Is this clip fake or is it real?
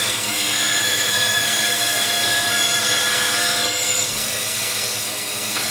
fake